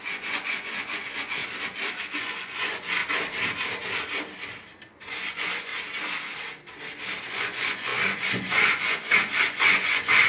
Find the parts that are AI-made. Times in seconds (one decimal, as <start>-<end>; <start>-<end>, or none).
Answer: 0.0-1.4; 2.1-3.0; 4.9-5.7; 7.3-10.3